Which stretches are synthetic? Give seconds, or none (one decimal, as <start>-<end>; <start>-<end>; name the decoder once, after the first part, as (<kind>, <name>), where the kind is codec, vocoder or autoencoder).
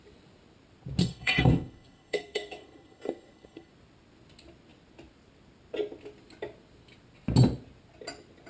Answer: 1.0-3.7 (codec, SNAC)